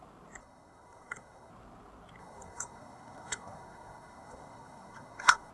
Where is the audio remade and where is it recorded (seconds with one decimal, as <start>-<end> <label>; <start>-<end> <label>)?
0.0-0.4 recorded; 0.4-1.5 remade; 1.5-2.2 recorded; 2.2-5.5 remade